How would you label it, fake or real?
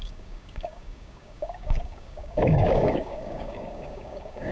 fake